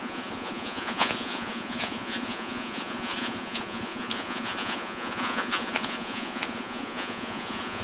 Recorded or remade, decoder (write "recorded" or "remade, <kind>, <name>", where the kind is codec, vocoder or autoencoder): remade, vocoder, Vocos